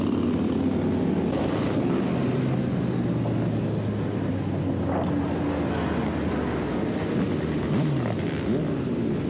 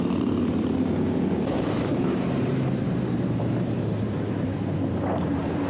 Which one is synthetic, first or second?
second